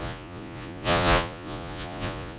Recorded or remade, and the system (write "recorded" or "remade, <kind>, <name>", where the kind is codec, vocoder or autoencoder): remade, vocoder, Vocos